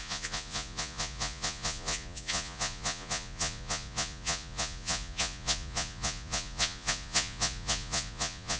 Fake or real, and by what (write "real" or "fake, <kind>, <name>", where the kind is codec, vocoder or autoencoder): fake, vocoder, Vocos